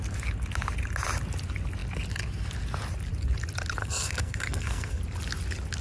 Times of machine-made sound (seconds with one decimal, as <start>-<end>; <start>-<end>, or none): 3.8-5.0